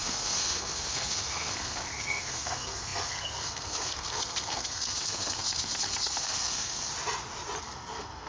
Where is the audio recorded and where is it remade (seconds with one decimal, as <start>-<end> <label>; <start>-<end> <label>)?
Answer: 0.0-6.9 remade; 6.9-7.6 recorded; 7.6-8.3 remade